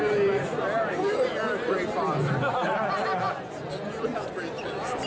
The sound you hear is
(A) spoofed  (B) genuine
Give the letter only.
B